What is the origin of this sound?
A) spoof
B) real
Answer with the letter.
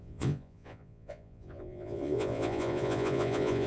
A